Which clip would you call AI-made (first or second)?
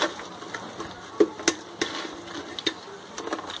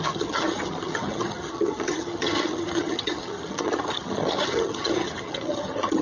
second